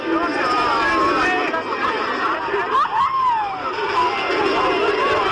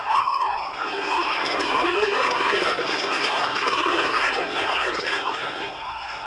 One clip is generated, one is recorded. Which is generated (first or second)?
second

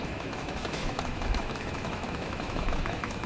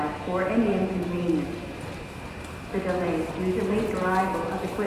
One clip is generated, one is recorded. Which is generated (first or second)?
first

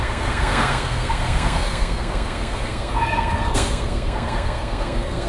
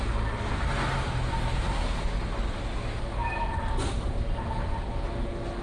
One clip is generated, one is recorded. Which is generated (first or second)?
first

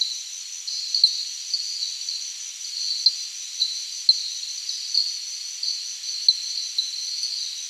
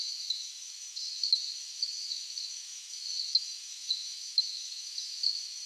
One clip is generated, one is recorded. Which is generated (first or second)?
second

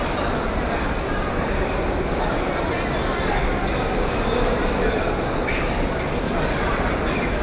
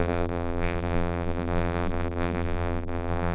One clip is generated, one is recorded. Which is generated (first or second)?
second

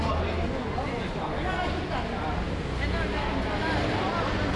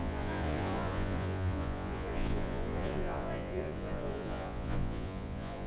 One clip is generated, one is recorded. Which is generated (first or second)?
second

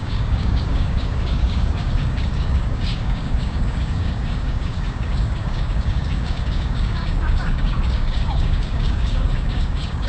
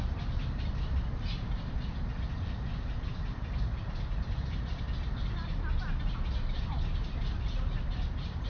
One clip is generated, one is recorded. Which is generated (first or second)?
first